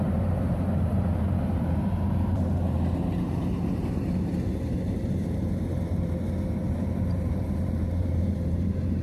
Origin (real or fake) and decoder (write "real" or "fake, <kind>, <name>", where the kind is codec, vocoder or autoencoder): fake, vocoder, BigVGAN v2